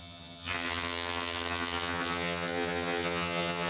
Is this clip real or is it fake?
fake